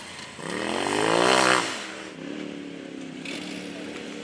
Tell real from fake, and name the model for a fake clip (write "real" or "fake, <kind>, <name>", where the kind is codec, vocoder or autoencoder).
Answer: real